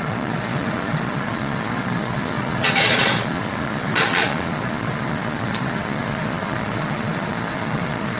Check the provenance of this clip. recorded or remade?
remade